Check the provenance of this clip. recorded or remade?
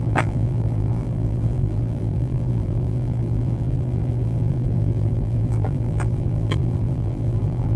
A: remade